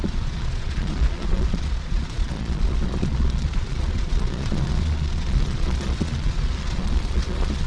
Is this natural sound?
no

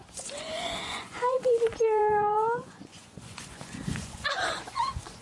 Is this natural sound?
no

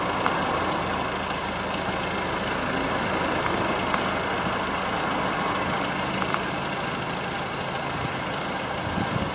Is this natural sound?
yes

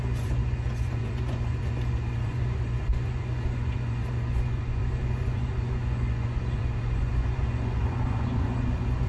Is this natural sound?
no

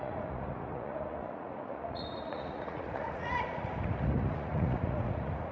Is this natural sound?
no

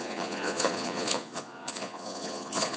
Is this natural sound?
no